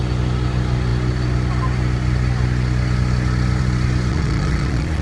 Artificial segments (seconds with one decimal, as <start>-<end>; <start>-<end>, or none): 4.1-5.0